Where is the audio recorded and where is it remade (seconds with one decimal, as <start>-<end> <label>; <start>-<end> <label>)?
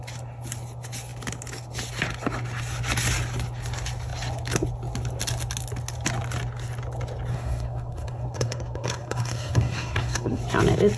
0.0-7.3 recorded; 7.3-10.4 remade; 10.4-11.0 recorded